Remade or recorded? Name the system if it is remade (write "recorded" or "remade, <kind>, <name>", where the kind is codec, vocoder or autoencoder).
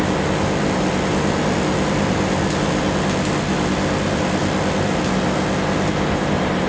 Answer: recorded